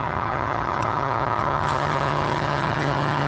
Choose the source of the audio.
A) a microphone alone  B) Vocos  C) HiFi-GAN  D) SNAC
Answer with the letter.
C